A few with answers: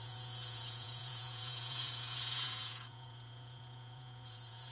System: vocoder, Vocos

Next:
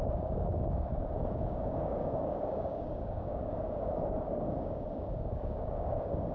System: codec, DAC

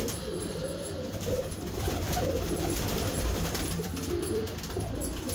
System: vocoder, BigVGAN v2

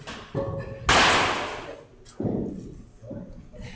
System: none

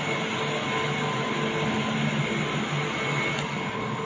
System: none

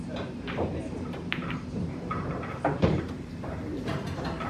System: vocoder, BigVGAN v2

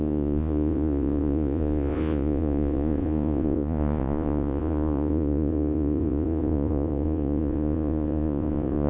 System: vocoder, Vocos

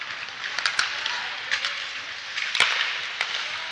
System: none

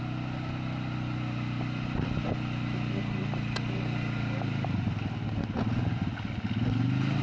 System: none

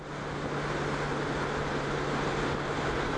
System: none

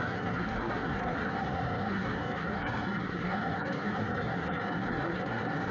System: codec, SNAC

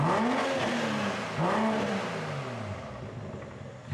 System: none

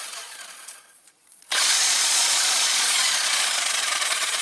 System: vocoder, Vocos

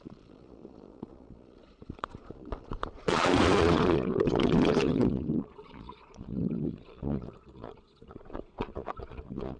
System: vocoder, Vocos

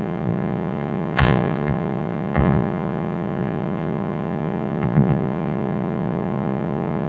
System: vocoder, Vocos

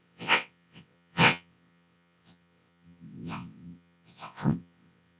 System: vocoder, WaveNeXt